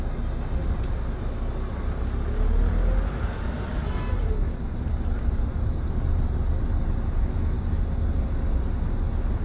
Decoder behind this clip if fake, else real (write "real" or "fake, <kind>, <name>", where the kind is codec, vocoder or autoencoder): real